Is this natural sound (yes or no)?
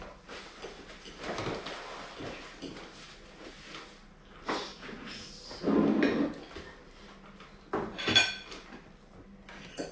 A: yes